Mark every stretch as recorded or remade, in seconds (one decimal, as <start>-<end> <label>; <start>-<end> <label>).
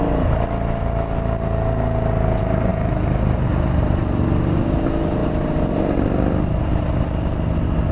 0.0-7.9 recorded